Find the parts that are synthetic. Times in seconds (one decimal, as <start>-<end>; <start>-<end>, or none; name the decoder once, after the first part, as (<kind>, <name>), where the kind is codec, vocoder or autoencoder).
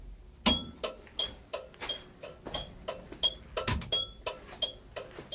none